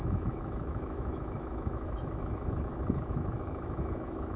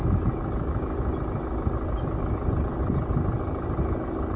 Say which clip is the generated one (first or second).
first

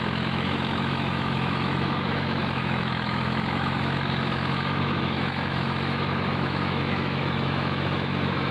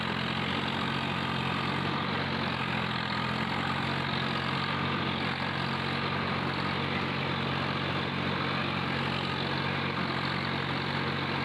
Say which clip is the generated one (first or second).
first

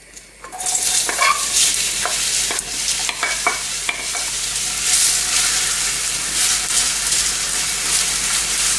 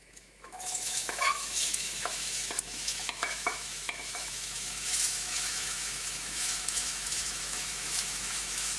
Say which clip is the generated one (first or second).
second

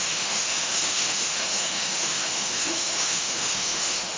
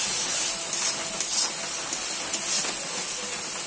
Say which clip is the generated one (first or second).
first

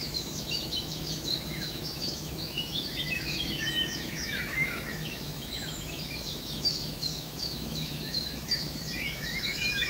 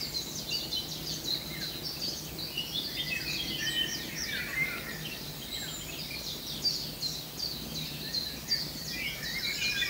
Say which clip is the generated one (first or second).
first